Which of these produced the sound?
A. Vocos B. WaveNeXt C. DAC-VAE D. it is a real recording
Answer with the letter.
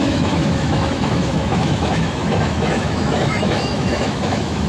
C